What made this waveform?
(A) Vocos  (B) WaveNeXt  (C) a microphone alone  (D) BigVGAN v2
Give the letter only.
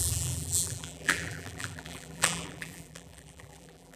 D